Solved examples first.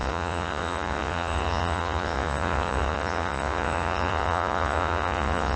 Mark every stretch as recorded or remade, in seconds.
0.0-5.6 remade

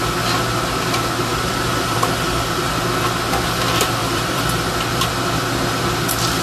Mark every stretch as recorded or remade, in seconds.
0.0-1.3 recorded; 1.3-2.7 remade; 2.7-4.0 recorded; 4.0-4.7 remade; 4.7-6.4 recorded

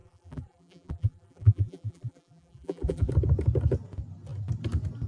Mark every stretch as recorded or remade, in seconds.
0.0-3.1 remade; 3.1-5.1 recorded

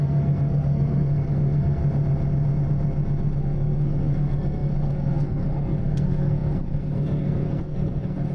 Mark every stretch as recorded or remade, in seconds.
0.0-1.8 remade; 1.8-3.4 recorded; 3.4-8.3 remade

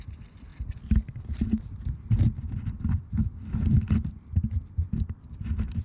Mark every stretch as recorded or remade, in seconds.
0.0-5.8 recorded

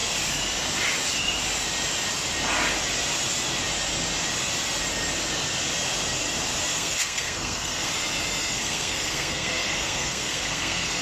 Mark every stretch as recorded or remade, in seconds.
0.0-6.7 recorded; 6.7-7.9 remade; 7.9-8.4 recorded; 8.4-11.0 remade

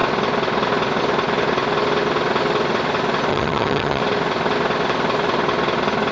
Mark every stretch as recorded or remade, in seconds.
0.0-3.3 recorded; 3.3-4.0 remade; 4.0-6.1 recorded

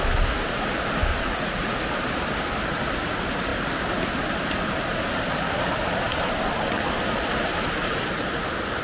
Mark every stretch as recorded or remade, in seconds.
0.0-1.1 recorded; 1.1-1.7 remade; 1.7-8.8 recorded